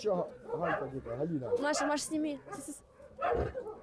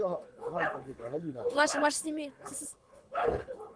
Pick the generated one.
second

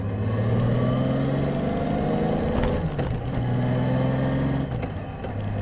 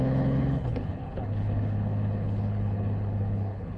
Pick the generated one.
second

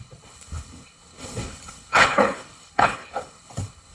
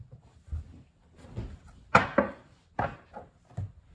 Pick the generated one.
first